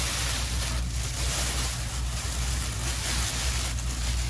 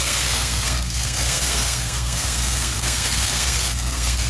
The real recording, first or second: first